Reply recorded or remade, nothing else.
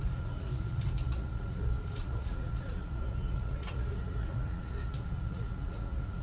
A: remade